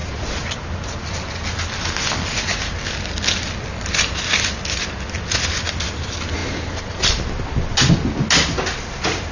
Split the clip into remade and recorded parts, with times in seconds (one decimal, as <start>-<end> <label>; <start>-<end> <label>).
0.0-9.3 recorded